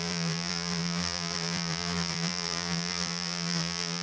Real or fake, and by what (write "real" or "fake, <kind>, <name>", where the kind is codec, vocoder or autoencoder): fake, vocoder, BigVGAN v2